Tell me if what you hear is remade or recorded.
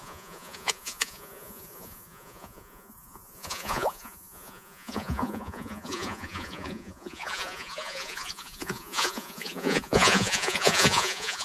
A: remade